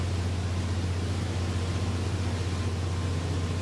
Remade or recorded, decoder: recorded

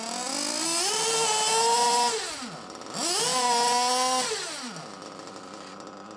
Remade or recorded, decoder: recorded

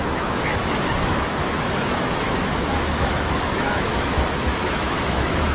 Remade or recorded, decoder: remade, autoencoder, DAC-VAE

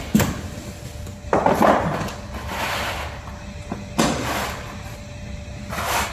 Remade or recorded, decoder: recorded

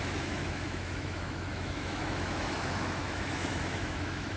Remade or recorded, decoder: remade, autoencoder, DAC-VAE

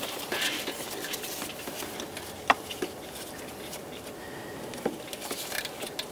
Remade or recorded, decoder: recorded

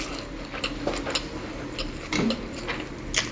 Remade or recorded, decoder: recorded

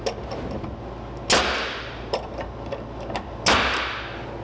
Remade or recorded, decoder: recorded